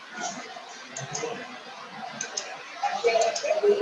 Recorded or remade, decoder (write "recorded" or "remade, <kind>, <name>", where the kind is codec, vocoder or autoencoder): recorded